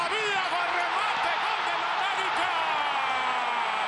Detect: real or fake real